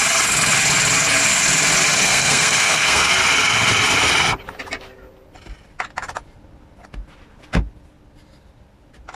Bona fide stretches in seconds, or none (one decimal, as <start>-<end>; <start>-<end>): 0.0-2.0; 3.1-9.1

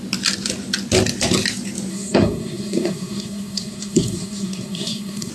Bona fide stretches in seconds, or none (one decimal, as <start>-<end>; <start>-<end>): 0.0-1.9

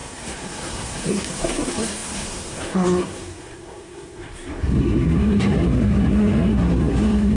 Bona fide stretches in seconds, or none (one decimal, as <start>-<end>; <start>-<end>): none

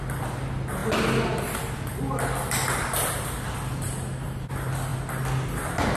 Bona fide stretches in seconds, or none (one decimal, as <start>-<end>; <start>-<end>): 0.0-6.0

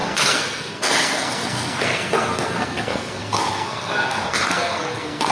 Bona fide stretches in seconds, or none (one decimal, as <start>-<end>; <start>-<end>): none

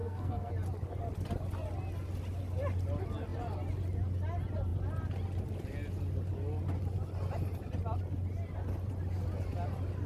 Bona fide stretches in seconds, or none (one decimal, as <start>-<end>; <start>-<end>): 0.5-10.1